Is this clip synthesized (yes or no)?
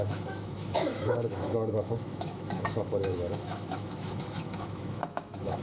yes